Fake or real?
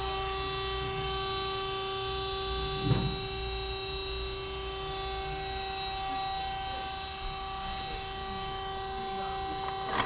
real